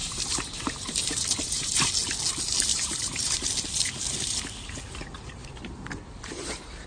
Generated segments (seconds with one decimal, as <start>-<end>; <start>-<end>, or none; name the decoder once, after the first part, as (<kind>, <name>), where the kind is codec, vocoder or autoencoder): 0.0-1.9 (vocoder, BigVGAN v2); 2.7-3.5; 5.4-5.9